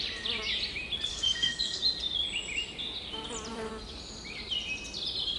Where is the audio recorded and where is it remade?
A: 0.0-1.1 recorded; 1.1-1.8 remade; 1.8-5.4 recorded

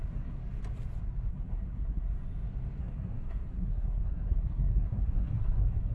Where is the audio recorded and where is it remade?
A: 0.0-0.4 remade; 0.4-1.3 recorded; 1.3-2.2 remade; 2.2-2.8 recorded; 2.8-5.9 remade

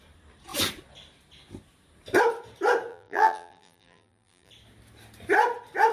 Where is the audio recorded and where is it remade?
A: 0.0-2.9 recorded; 2.9-4.5 remade; 4.5-5.9 recorded

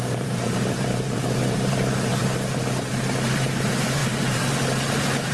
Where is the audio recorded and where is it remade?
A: 0.0-2.2 remade; 2.2-2.9 recorded; 2.9-5.3 remade